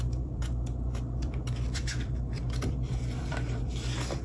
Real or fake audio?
fake